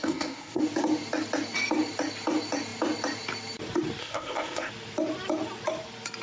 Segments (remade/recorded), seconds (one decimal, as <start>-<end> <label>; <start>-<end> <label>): 0.0-0.6 remade; 0.6-4.0 recorded; 4.0-4.7 remade; 4.7-6.2 recorded